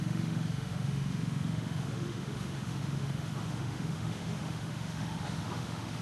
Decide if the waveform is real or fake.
fake